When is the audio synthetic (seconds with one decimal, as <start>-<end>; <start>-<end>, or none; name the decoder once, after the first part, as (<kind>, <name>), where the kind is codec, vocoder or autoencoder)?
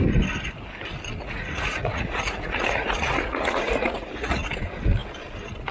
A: 1.2-4.6 (vocoder, Vocos)